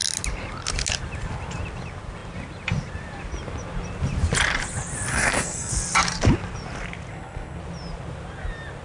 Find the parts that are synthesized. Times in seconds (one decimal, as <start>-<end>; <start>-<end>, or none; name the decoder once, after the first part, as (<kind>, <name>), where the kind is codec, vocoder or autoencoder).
5.1-5.7 (codec, SNAC); 7.1-7.6